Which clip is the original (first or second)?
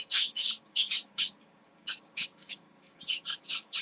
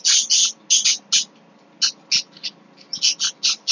second